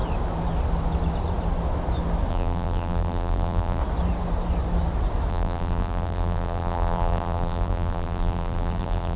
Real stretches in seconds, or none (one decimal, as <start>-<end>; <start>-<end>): 0.0-2.3; 3.8-5.3